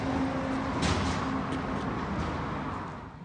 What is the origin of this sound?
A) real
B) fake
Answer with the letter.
A